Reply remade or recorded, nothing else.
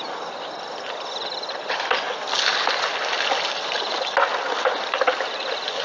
recorded